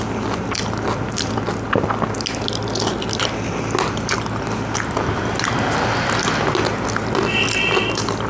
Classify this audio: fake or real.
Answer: real